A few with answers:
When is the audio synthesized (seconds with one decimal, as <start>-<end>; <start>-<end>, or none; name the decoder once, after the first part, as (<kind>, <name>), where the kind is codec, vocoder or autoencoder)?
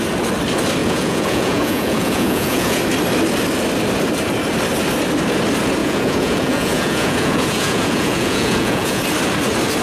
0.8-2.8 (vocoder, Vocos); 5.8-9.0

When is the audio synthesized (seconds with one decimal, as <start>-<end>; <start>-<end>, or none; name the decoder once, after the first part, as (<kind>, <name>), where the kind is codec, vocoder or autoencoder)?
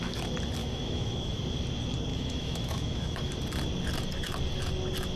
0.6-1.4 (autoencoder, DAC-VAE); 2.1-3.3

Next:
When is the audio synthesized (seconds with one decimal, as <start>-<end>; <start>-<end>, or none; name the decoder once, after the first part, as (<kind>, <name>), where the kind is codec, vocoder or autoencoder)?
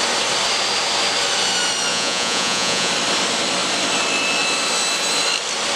1.9-2.9 (vocoder, Vocos)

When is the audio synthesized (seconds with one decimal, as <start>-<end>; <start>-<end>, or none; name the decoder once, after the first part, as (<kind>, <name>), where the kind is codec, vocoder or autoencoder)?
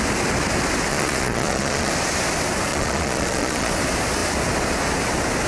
0.9-1.9 (vocoder, Vocos); 2.7-3.7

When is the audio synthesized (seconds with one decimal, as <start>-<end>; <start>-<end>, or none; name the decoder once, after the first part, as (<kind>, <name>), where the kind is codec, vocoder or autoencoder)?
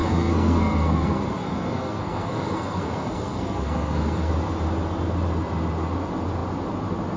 0.0-4.3 (codec, SNAC)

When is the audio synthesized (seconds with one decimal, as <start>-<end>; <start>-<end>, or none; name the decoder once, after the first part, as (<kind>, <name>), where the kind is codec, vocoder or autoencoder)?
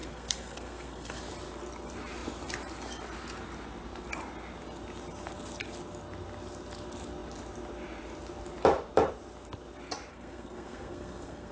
0.0-1.2 (codec, SNAC); 10.1-11.5